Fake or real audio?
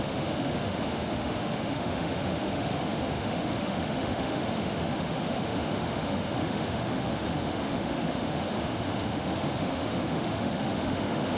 fake